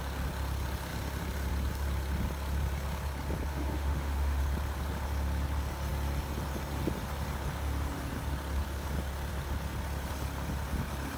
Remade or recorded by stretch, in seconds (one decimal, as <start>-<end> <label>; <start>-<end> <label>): 0.0-3.5 recorded; 3.5-4.4 remade; 4.4-11.2 recorded